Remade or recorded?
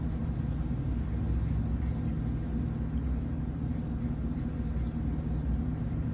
recorded